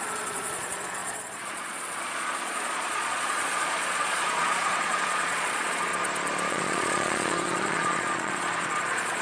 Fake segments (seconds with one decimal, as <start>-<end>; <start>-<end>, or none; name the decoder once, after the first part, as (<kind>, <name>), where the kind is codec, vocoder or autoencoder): 0.0-5.9 (vocoder, Vocos); 6.5-9.2